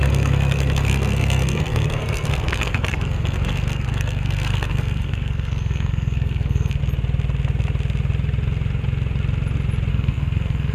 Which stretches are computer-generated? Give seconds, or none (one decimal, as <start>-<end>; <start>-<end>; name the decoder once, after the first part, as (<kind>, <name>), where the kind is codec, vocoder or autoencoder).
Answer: 0.0-6.8 (codec, SNAC); 9.9-10.7